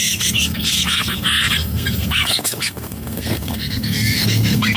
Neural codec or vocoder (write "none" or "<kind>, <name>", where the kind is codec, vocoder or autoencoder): codec, SNAC